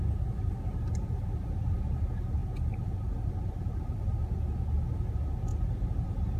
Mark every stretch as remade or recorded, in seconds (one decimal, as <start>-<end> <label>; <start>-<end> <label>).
0.0-2.4 recorded; 2.4-3.6 remade; 3.6-5.5 recorded; 5.5-6.4 remade